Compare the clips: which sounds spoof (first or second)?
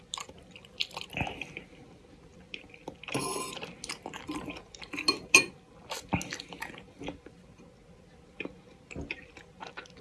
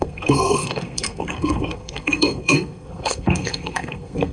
second